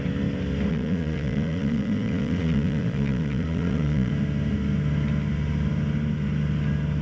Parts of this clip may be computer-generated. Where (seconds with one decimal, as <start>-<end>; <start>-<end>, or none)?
0.7-4.1